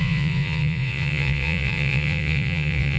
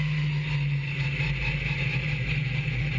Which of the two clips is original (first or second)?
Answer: second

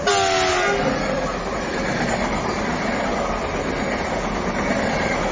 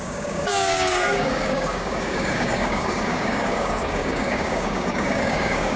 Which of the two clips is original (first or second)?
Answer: first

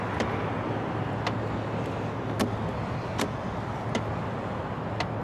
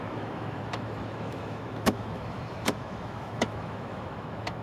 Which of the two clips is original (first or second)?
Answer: first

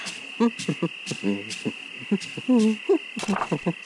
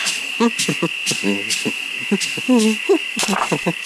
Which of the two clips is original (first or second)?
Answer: first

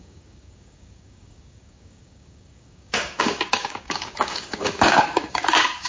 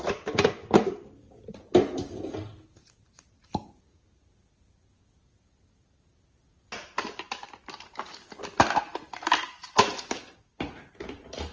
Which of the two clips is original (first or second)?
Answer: second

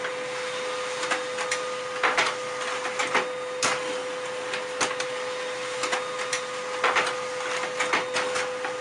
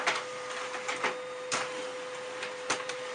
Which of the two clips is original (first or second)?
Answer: first